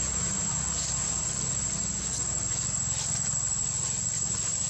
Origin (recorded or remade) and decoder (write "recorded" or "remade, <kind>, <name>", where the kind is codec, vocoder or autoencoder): recorded